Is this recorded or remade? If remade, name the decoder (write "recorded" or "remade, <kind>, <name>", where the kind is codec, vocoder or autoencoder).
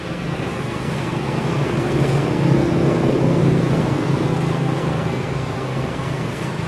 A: remade, codec, SNAC